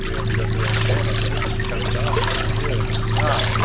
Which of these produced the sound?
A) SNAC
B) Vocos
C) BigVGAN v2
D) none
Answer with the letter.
D